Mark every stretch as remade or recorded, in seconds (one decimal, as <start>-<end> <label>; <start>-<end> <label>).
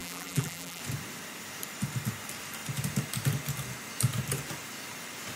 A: 0.0-0.8 remade; 0.8-5.4 recorded